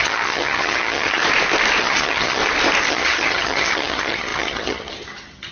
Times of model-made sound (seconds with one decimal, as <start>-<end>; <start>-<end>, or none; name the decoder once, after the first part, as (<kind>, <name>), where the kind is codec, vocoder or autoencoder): 0.0-1.2 (vocoder, HiFi-GAN); 1.8-2.4; 2.9-5.5